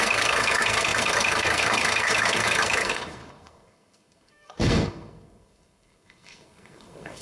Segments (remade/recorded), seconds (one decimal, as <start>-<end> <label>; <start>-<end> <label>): 0.0-7.2 remade